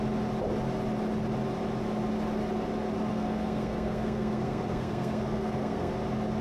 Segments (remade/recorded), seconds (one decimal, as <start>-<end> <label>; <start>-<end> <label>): 0.0-3.1 recorded; 3.1-5.9 remade; 5.9-6.4 recorded